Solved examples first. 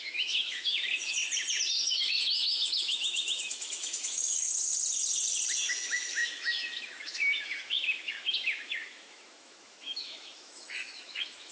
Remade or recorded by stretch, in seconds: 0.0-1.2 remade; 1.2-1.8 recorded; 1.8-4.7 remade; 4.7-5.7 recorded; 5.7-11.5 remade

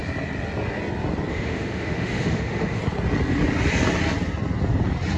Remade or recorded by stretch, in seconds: 0.0-1.3 recorded; 1.3-2.8 remade; 2.8-5.2 recorded